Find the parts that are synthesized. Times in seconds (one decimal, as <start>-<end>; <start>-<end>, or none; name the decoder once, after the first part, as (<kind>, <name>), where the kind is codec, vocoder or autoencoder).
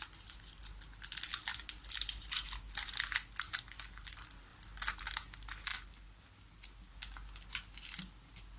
none